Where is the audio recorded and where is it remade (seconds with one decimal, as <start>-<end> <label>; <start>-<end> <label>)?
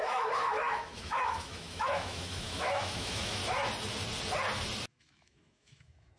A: 0.0-3.4 remade; 3.4-4.9 recorded; 4.9-6.2 remade